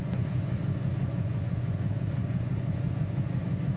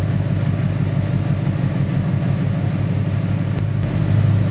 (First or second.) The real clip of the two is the second